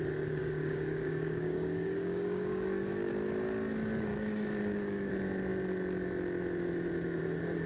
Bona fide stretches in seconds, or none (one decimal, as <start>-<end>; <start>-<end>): 0.0-0.4; 3.1-4.1; 5.1-7.7